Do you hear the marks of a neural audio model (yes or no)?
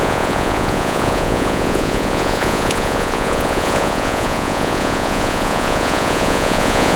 yes